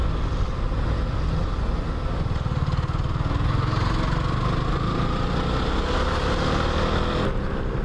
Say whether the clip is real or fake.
real